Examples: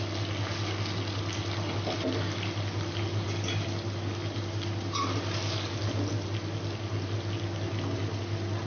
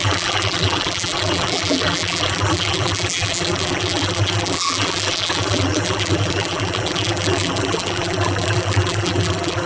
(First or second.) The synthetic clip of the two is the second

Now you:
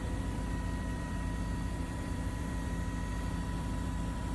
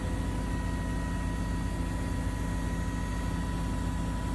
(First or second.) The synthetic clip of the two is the first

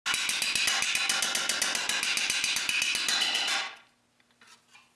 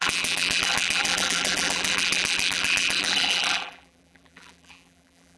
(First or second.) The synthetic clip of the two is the second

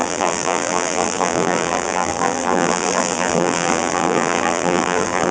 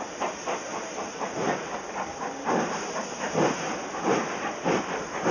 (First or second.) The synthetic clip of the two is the first